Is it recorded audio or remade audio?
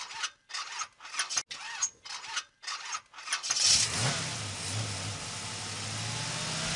recorded